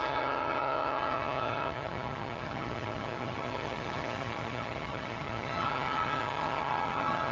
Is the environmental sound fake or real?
fake